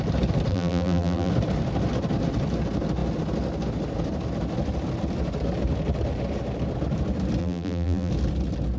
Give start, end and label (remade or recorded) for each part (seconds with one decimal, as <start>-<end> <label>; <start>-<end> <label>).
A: 0.0-0.5 recorded; 0.5-1.3 remade; 1.3-7.4 recorded; 7.4-8.1 remade; 8.1-8.8 recorded